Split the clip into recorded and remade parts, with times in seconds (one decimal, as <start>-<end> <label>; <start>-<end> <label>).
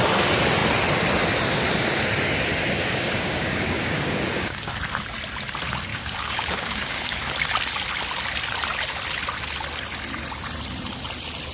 0.0-2.8 recorded; 2.8-4.7 remade; 4.7-5.9 recorded; 5.9-7.3 remade; 7.3-11.5 recorded